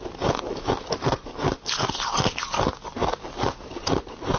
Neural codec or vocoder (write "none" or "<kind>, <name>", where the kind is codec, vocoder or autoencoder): none